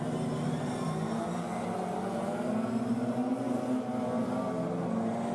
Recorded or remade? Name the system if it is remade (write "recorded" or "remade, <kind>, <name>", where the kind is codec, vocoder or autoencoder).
recorded